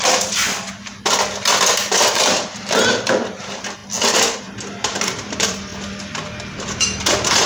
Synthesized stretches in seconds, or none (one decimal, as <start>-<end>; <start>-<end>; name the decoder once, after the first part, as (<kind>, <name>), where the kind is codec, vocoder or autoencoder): 0.0-0.9 (vocoder, BigVGAN v2); 2.1-3.8; 4.4-5.7

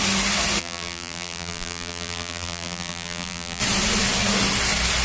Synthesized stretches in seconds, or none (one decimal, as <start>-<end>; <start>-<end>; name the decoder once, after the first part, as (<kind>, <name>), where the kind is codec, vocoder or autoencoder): 0.6-3.6 (vocoder, BigVGAN v2)

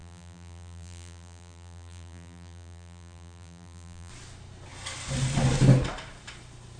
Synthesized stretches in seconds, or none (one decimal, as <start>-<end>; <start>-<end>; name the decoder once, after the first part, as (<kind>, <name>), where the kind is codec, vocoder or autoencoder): 0.0-4.1 (vocoder, BigVGAN v2)

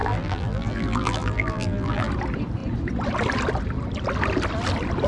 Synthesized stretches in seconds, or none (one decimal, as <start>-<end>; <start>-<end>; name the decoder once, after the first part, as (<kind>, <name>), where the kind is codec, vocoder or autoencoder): 0.0-2.1 (vocoder, BigVGAN v2)

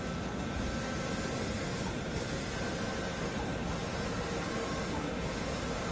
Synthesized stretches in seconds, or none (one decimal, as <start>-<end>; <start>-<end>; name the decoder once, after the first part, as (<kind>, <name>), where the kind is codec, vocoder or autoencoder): 3.8-4.3 (vocoder, BigVGAN v2)

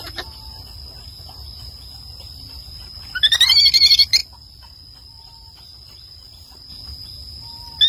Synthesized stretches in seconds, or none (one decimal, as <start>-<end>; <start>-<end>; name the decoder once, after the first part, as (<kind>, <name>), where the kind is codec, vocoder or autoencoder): 4.2-6.7 (vocoder, BigVGAN v2)